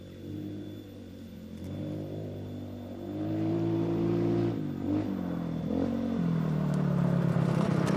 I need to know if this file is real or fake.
real